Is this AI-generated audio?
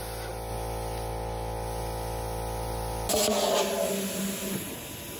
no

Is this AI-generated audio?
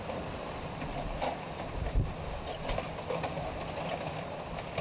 no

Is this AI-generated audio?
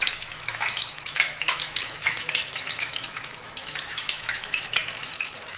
yes